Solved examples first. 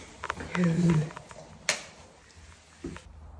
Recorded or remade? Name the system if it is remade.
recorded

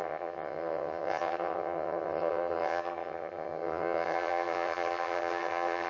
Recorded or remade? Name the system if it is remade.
remade, vocoder, HiFi-GAN